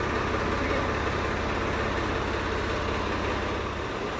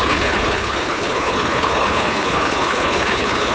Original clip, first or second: first